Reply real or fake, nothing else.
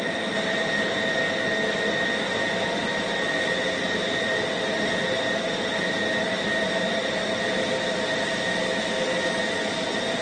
real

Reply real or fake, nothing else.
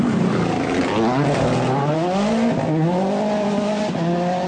real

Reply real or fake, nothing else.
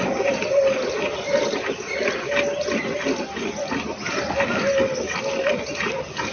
real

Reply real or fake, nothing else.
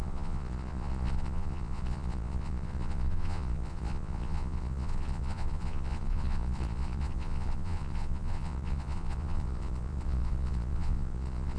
fake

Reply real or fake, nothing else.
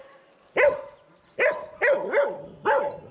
real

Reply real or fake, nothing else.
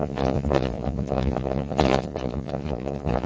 fake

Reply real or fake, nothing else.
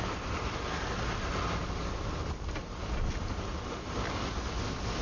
real